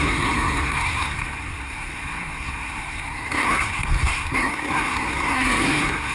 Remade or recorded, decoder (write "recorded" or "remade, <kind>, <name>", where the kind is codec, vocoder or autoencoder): remade, codec, SNAC